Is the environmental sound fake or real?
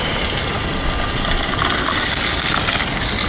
real